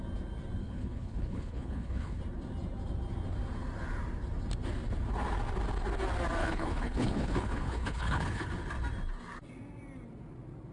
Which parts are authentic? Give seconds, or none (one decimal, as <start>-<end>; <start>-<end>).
0.0-0.6; 2.2-6.4; 8.5-10.7